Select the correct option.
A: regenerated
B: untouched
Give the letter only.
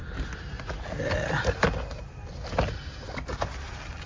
B